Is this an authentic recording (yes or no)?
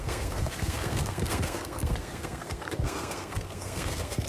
no